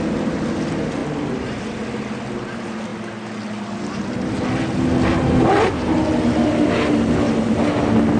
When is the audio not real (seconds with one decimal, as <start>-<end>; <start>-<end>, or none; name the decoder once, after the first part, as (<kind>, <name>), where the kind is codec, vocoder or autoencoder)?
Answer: 1.0-1.8 (vocoder, BigVGAN v2)